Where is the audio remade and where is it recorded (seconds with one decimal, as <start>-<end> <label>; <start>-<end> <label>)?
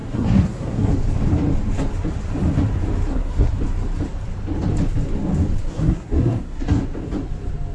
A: 0.0-0.9 remade; 0.9-3.1 recorded; 3.1-3.6 remade; 3.6-5.6 recorded; 5.6-6.8 remade; 6.8-7.7 recorded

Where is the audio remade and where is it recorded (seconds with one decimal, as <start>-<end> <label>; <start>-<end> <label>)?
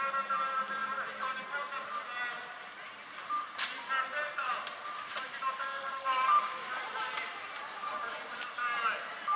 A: 0.0-5.6 recorded; 5.6-6.8 remade; 6.8-9.4 recorded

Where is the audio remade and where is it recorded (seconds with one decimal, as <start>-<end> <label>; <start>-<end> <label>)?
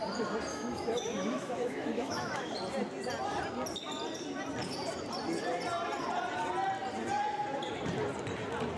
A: 0.0-0.5 recorded; 0.5-2.5 remade; 2.5-8.8 recorded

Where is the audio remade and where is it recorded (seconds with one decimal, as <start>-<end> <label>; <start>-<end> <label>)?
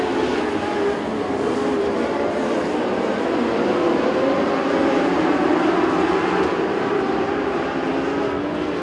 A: 0.0-1.1 recorded; 1.1-5.8 remade; 5.8-6.5 recorded; 6.5-7.9 remade; 7.9-8.8 recorded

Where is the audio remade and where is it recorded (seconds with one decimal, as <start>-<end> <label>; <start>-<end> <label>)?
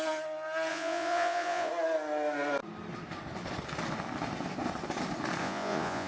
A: 0.0-0.7 recorded; 0.7-1.7 remade; 1.7-5.4 recorded; 5.4-6.1 remade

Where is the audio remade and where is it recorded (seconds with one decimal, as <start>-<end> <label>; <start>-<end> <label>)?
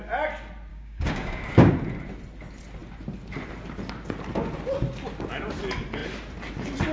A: 0.0-0.7 recorded; 0.7-1.7 remade; 1.7-6.9 recorded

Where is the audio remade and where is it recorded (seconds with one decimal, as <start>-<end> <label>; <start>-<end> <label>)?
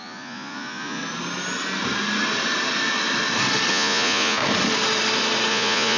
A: 0.0-1.0 remade; 1.0-3.7 recorded; 3.7-4.4 remade; 4.4-5.5 recorded; 5.5-6.0 remade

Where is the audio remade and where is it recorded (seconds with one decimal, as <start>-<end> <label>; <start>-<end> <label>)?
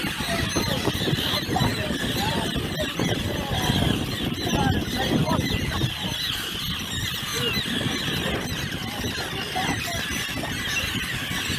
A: 0.0-1.7 remade; 1.7-6.7 recorded; 6.7-7.3 remade; 7.3-10.8 recorded; 10.8-11.6 remade